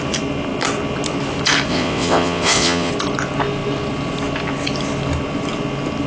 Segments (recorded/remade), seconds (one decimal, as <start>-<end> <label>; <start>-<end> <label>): 0.0-1.7 recorded; 1.7-2.9 remade; 2.9-6.1 recorded